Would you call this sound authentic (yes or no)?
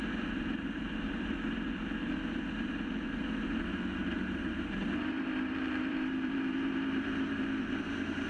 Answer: no